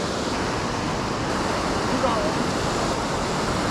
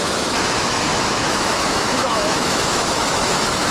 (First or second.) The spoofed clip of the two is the second